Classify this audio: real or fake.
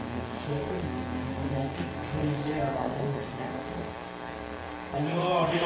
fake